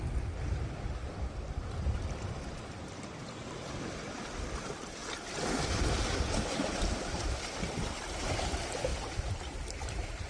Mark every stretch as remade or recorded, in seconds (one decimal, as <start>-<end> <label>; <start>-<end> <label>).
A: 0.0-10.3 recorded